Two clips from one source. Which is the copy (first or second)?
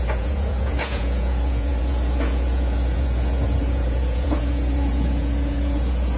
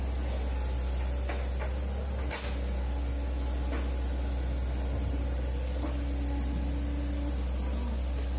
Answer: first